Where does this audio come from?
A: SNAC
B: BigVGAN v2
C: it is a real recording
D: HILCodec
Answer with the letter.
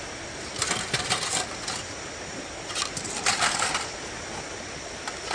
C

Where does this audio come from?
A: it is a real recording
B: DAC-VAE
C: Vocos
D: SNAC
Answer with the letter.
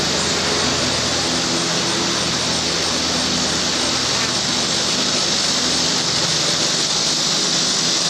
A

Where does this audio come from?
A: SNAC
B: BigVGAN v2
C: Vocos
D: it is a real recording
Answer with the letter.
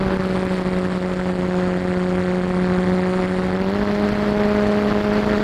D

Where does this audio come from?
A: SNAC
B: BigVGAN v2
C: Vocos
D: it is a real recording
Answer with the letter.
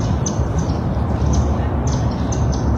D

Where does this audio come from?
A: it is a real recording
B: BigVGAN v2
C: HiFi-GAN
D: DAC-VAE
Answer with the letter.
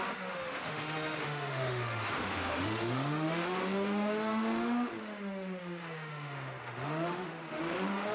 D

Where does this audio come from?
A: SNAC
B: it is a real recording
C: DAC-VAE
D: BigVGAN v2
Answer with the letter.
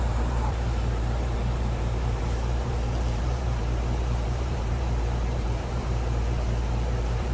D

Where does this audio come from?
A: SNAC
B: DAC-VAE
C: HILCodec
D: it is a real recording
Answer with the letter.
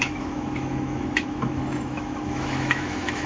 B